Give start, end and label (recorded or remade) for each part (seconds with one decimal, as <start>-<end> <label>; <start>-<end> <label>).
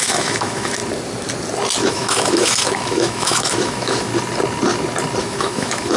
0.0-0.8 remade; 0.8-1.9 recorded; 1.9-4.1 remade; 4.1-5.2 recorded; 5.2-6.0 remade